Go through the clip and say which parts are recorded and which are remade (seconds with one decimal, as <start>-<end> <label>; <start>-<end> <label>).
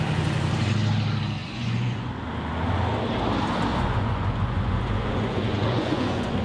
0.0-1.4 recorded; 1.4-2.2 remade; 2.2-3.7 recorded; 3.7-6.4 remade